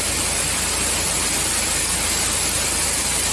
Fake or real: real